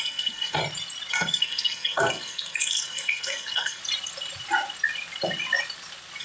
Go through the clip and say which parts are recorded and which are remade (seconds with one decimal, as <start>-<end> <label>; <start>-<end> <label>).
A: 0.0-0.6 remade; 0.6-1.1 recorded; 1.1-3.8 remade; 3.8-6.2 recorded